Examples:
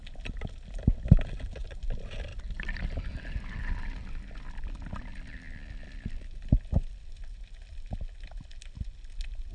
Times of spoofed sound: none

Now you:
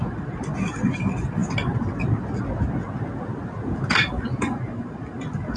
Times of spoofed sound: 0.0-1.4 (vocoder, BigVGAN v2); 3.9-5.6

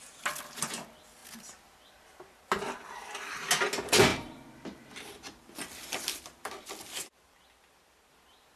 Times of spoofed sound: 4.1-8.1 (vocoder, BigVGAN v2)

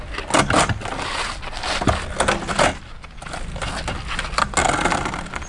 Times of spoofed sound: none

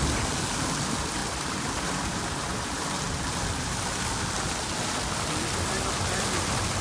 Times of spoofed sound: 1.2-4.5 (vocoder, BigVGAN v2)

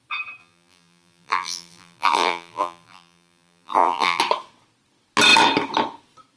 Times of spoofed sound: 0.4-4.2 (vocoder, BigVGAN v2)

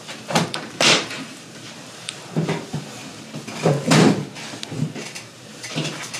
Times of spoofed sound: 0.0-3.0 (vocoder, BigVGAN v2); 5.5-6.2